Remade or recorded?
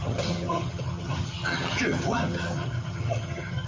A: remade